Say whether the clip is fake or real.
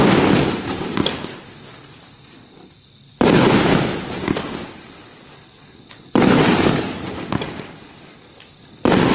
real